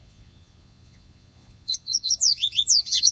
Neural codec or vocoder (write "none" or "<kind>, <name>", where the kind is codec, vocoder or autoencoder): vocoder, Vocos